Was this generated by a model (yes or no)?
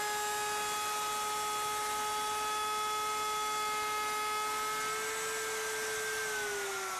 no